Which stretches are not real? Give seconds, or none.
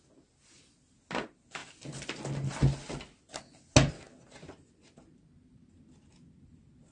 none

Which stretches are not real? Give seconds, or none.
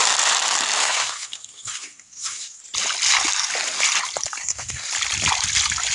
0.8-2.6 (codec, SNAC); 4.4-4.9